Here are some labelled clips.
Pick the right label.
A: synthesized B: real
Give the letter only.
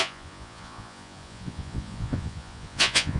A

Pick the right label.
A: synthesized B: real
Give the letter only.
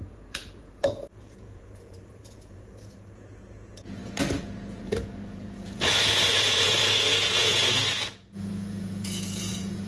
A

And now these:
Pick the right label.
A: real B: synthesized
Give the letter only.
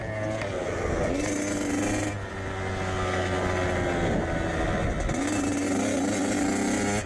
A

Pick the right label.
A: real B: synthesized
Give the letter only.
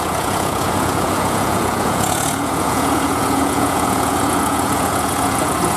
B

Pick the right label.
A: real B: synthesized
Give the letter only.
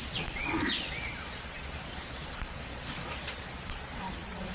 B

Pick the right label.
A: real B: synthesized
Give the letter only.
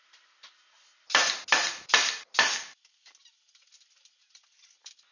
A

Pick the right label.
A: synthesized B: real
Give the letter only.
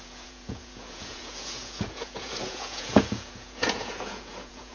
A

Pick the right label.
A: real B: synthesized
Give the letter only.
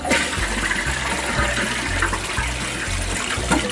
A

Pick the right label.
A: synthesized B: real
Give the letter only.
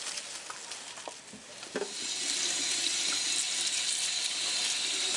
B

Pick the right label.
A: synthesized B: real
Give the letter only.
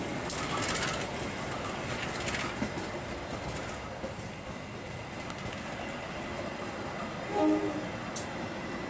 B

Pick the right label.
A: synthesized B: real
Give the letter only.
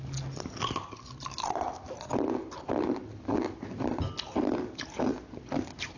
B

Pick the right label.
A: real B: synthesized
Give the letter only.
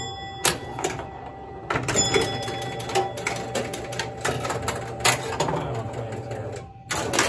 A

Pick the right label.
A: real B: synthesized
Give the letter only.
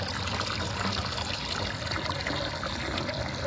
A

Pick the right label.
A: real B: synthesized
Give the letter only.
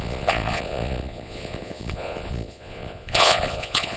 B